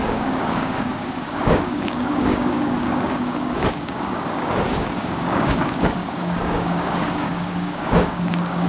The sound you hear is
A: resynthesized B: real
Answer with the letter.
A